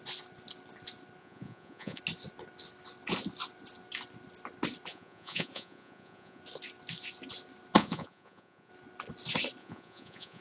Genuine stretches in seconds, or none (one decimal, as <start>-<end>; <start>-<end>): 0.0-1.2; 2.0-4.9; 6.4-7.8; 8.7-9.6